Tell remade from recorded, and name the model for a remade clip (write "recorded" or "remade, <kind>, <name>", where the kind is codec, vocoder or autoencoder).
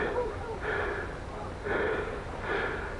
recorded